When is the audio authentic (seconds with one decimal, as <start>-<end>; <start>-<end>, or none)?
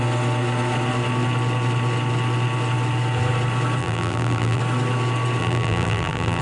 0.0-3.8; 4.6-5.4